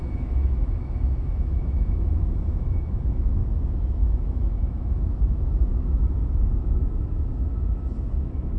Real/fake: fake